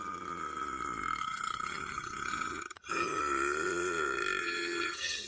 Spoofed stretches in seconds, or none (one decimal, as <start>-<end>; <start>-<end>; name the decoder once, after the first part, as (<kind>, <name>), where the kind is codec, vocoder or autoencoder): 1.2-3.2 (vocoder, HiFi-GAN); 4.4-5.3